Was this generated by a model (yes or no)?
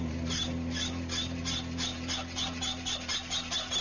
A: no